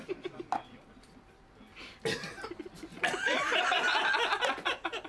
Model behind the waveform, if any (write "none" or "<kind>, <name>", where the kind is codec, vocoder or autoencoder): none